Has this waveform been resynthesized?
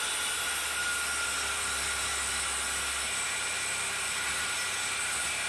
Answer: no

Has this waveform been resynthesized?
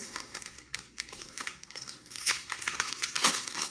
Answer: yes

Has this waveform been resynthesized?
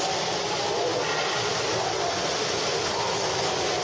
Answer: yes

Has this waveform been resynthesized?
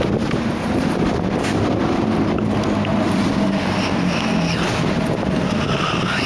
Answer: no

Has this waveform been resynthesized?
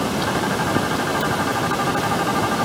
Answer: no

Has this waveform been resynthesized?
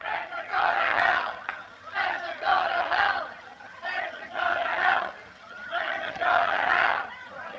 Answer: yes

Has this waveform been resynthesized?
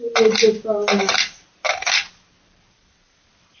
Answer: no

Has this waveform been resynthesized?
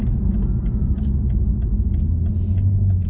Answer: no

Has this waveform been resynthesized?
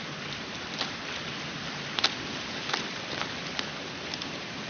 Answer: no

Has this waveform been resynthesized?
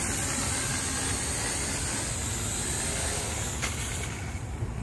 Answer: no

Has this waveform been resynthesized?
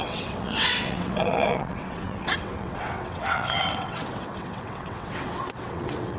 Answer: yes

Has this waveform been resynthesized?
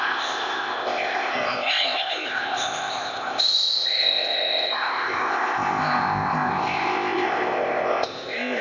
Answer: yes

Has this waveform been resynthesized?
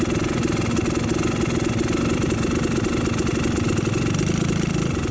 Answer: no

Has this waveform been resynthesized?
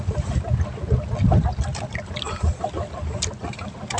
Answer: no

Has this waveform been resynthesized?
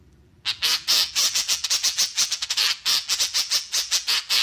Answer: yes